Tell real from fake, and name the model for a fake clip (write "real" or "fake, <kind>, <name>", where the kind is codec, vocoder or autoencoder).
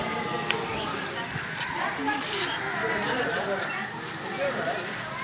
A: real